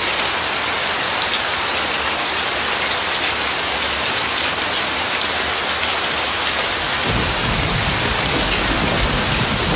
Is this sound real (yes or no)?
yes